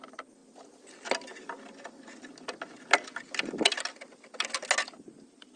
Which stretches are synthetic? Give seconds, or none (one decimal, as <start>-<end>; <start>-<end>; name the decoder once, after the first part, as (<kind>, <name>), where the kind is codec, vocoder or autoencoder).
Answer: none